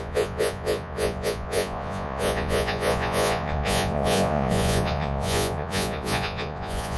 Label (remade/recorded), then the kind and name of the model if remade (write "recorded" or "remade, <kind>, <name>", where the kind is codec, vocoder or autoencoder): remade, vocoder, Vocos